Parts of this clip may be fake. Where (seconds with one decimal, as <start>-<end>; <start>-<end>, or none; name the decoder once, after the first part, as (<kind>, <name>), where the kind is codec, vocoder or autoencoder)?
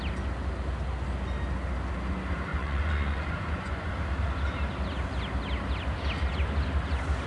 2.5-3.9 (vocoder, Vocos)